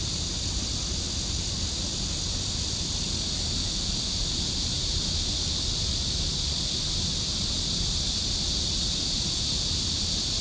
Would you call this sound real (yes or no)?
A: yes